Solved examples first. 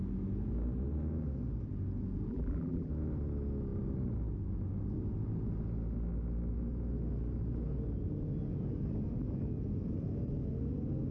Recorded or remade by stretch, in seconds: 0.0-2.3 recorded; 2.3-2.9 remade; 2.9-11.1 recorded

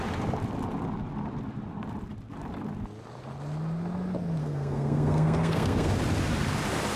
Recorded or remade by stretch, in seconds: 0.0-4.4 recorded; 4.4-5.9 remade; 5.9-7.0 recorded

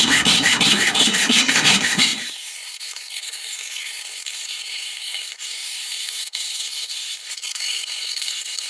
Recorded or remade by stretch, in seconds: 0.0-8.7 remade

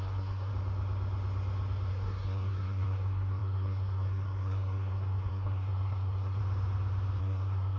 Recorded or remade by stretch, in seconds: 0.0-0.5 remade; 0.5-1.9 recorded; 1.9-6.4 remade; 6.4-7.2 recorded; 7.2-7.8 remade

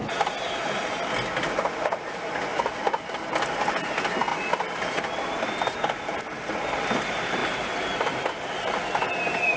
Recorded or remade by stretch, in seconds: 0.0-2.5 recorded; 2.5-3.1 remade; 3.1-7.4 recorded; 7.4-8.3 remade; 8.3-9.6 recorded

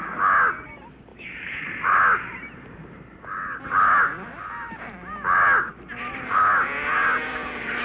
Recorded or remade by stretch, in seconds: 0.0-1.1 recorded; 1.1-1.6 remade; 1.6-7.8 recorded